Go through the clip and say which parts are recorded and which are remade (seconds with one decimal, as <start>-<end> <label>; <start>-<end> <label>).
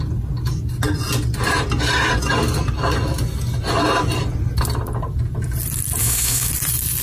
0.0-6.0 recorded; 6.0-6.5 remade; 6.5-7.0 recorded